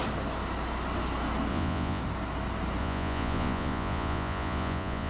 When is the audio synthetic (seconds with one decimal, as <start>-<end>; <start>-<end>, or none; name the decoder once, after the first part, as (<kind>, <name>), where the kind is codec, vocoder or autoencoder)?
1.5-2.0 (vocoder, Vocos); 2.8-5.1